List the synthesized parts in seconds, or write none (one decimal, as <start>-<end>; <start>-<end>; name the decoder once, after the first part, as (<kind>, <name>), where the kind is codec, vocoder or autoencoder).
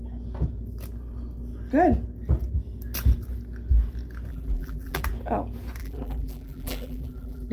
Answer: 4.3-5.0 (vocoder, BigVGAN v2); 5.8-7.5